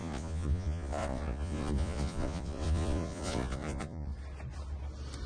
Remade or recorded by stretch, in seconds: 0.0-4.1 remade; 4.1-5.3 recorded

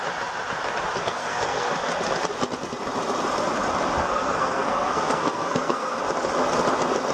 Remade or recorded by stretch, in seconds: 0.0-1.0 recorded; 1.0-1.7 remade; 1.7-4.0 recorded; 4.0-6.0 remade; 6.0-7.1 recorded